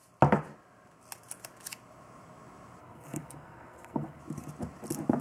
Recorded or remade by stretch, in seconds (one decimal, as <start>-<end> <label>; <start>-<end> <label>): 0.0-2.8 recorded; 2.8-4.2 remade; 4.2-5.2 recorded